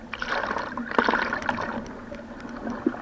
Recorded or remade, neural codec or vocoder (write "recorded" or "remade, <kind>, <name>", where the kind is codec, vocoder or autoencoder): recorded